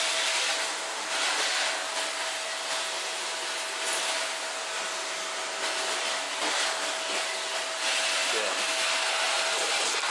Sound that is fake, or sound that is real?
real